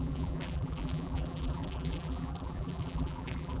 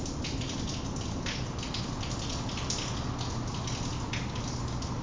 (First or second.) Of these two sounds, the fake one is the first